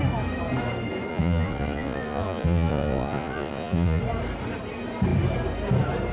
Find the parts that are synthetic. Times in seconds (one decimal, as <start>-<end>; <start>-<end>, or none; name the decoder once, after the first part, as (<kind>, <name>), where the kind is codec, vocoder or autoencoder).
1.1-4.0 (vocoder, Vocos)